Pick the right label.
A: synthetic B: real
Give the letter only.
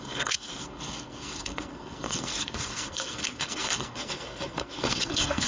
A